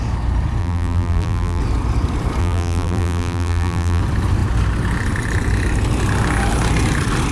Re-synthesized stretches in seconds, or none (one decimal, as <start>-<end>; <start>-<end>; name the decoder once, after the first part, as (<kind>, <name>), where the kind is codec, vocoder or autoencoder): 0.6-1.6 (vocoder, BigVGAN v2); 2.4-4.0

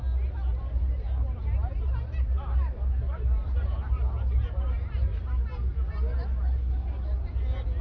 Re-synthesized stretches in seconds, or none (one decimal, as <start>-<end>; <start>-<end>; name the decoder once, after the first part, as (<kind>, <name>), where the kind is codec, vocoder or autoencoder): 0.5-5.2 (vocoder, BigVGAN v2)

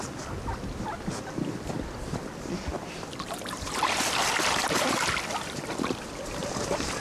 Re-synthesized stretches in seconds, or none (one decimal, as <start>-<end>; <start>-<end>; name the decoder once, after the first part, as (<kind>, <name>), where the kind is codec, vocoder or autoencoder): 2.7-5.7 (vocoder, BigVGAN v2); 6.4-7.0

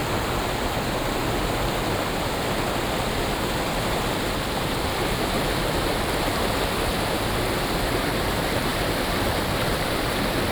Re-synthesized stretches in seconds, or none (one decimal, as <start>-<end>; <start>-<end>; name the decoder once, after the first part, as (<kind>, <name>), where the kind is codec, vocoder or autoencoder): none